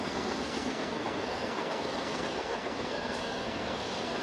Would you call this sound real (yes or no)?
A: no